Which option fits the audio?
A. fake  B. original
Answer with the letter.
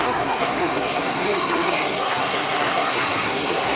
A